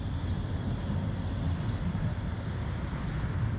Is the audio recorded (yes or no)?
yes